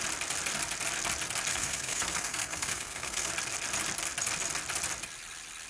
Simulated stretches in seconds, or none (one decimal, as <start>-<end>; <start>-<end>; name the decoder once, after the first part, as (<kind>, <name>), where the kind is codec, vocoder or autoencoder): 1.5-3.3 (codec, SNAC)